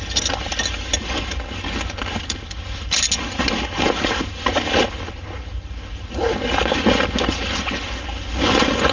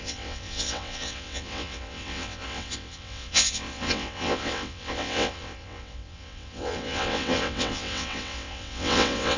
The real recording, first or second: first